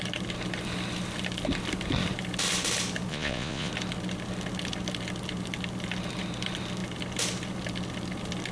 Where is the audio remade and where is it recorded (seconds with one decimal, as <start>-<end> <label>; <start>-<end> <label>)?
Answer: 0.0-3.1 recorded; 3.1-3.7 remade; 3.7-8.5 recorded